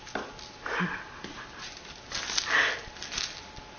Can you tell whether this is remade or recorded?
recorded